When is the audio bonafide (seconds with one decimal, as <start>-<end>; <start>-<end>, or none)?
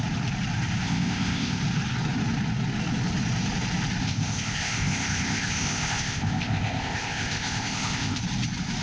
0.0-0.8; 1.6-4.0; 8.2-8.8